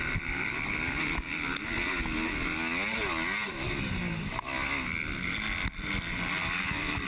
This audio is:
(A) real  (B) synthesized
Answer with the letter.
A